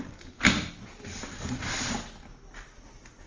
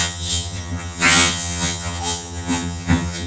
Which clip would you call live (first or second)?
first